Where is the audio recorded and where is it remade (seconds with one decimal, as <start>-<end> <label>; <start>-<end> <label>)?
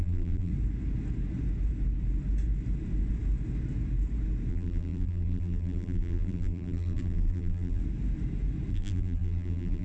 0.0-0.5 remade; 0.5-4.5 recorded; 4.5-7.8 remade; 7.8-8.7 recorded; 8.7-9.8 remade